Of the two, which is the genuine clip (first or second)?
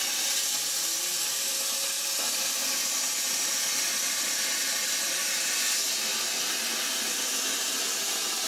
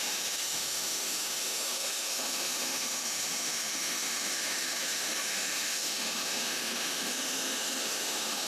first